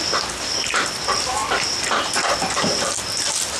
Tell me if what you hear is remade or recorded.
recorded